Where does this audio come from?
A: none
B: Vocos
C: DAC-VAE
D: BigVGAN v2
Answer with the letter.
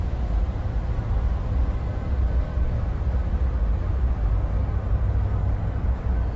A